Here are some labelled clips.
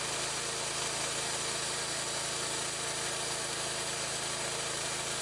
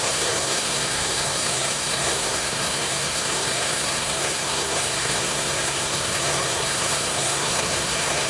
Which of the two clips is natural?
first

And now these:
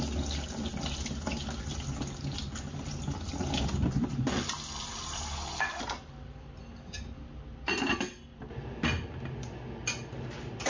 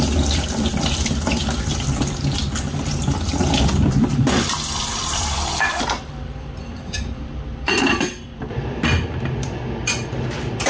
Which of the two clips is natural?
first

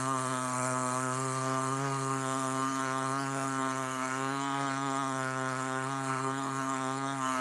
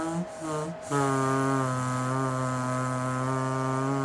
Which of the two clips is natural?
second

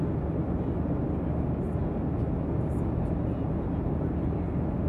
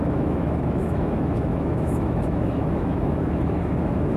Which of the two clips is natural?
first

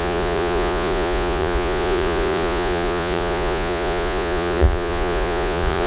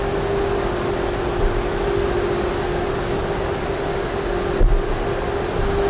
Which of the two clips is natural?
second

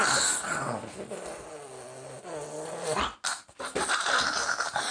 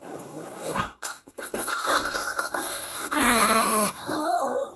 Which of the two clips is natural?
first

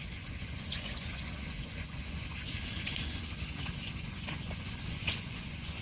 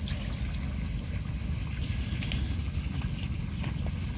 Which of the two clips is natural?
second